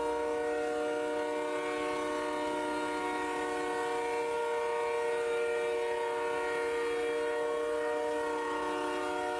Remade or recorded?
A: recorded